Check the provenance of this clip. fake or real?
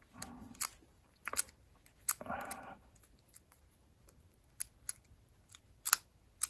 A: fake